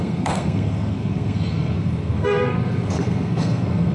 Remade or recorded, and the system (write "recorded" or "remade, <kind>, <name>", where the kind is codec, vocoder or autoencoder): remade, codec, SNAC